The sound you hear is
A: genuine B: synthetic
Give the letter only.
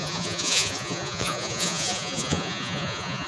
B